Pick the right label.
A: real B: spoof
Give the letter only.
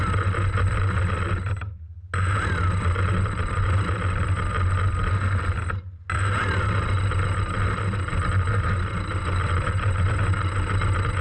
A